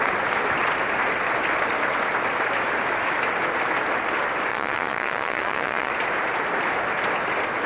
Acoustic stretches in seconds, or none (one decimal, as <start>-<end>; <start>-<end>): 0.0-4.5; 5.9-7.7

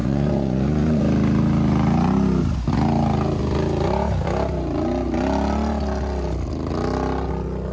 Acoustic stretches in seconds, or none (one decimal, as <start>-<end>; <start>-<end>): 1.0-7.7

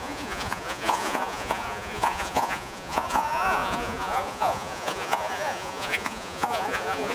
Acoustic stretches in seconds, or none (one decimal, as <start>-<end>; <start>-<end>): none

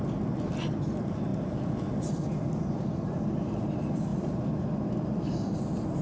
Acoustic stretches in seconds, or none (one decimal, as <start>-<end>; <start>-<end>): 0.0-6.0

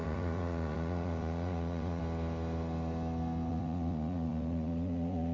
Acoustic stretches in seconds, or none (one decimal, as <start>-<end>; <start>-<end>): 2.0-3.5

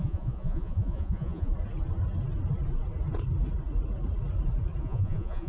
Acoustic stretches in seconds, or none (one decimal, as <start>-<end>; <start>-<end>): 1.5-4.8

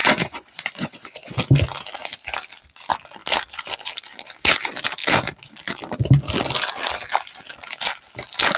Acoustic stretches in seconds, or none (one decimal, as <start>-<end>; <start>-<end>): 1.3-8.6

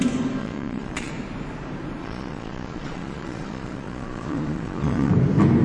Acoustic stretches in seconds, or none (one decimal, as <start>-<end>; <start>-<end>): 0.0-0.4; 1.1-2.0; 5.1-5.6